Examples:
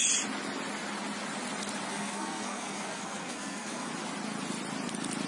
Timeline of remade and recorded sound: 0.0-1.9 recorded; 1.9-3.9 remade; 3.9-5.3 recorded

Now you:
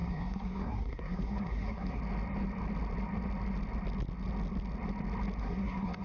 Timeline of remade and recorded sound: 0.0-2.0 remade; 2.0-5.4 recorded; 5.4-6.0 remade

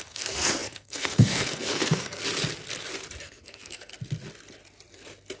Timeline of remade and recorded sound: 0.0-2.2 remade; 2.2-3.2 recorded; 3.2-3.9 remade; 3.9-5.4 recorded

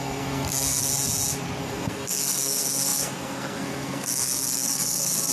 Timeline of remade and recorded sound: 0.0-0.9 remade; 0.9-1.6 recorded; 1.6-5.3 remade

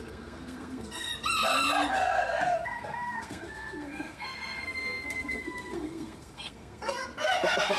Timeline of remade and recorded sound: 0.0-1.1 remade; 1.1-1.9 recorded; 1.9-7.8 remade

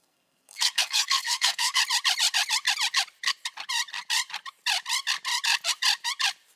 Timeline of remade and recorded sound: 0.0-1.8 remade; 1.8-6.6 recorded

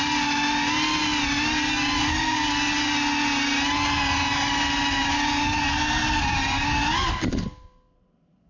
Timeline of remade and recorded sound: 0.0-8.5 recorded